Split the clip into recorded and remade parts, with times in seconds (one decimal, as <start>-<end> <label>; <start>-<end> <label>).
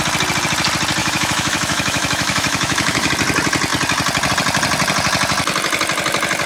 0.0-1.0 recorded; 1.0-3.1 remade; 3.1-6.5 recorded